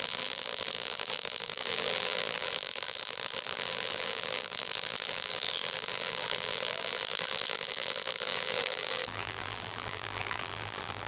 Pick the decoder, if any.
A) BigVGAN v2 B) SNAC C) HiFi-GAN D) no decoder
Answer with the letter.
A